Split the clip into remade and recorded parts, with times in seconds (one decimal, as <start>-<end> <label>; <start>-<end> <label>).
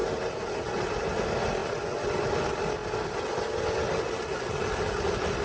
0.0-5.4 recorded